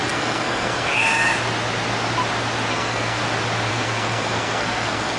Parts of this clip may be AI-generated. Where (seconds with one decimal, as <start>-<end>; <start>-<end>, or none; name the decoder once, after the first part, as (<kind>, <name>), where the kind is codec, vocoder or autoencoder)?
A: 0.0-0.9 (codec, SNAC); 2.7-3.2; 3.7-5.2